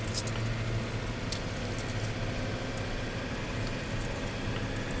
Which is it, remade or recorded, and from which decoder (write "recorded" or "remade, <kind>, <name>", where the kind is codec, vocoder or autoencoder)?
recorded